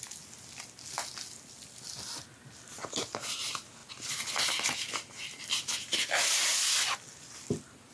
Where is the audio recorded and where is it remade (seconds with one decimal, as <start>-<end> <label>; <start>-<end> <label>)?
0.0-7.9 recorded

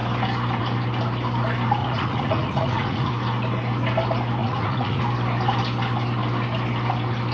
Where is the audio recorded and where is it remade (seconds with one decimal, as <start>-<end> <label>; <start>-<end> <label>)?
0.0-1.8 recorded; 1.8-3.1 remade; 3.1-4.4 recorded; 4.4-5.0 remade; 5.0-7.3 recorded

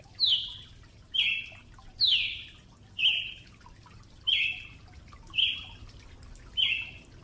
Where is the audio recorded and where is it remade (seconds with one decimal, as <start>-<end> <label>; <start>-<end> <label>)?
0.0-7.2 recorded

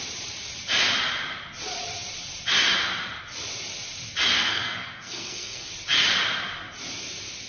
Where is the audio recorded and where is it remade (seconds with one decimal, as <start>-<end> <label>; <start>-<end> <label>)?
0.0-4.3 recorded; 4.3-5.7 remade; 5.7-7.5 recorded

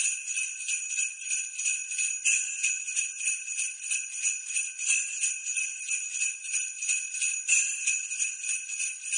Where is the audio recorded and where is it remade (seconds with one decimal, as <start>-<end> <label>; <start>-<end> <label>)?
0.0-9.2 recorded